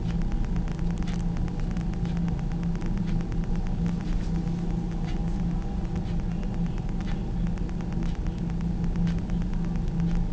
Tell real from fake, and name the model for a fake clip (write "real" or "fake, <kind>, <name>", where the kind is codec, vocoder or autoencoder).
real